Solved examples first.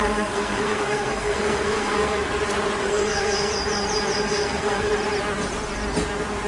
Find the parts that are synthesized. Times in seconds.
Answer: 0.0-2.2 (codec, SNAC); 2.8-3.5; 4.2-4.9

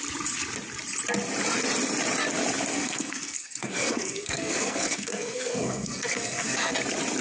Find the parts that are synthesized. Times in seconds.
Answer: 2.7-6.7 (codec, SNAC)